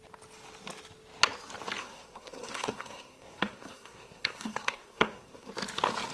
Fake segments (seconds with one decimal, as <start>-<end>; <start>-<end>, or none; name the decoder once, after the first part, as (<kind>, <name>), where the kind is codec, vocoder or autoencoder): 1.8-5.5 (codec, SNAC)